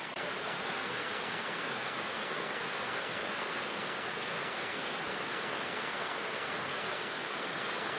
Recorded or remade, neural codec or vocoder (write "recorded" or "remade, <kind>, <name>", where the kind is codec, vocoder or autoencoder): remade, codec, SNAC